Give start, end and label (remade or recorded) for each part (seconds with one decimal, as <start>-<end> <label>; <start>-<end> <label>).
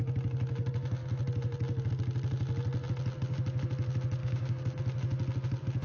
0.0-4.2 recorded; 4.2-4.8 remade; 4.8-5.8 recorded